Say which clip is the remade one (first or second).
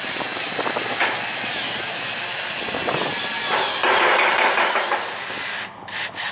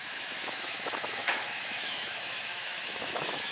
second